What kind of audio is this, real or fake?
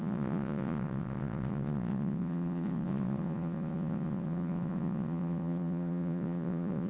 fake